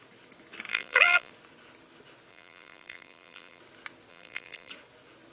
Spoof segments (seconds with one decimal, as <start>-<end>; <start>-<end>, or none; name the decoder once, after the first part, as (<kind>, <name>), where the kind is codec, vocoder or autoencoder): 0.7-1.3 (vocoder, BigVGAN v2); 2.3-3.6; 4.1-4.7